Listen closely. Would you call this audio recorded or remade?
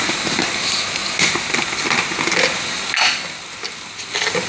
recorded